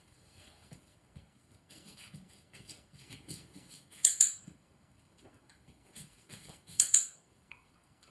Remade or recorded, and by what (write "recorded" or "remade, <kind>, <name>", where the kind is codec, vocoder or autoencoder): remade, codec, SNAC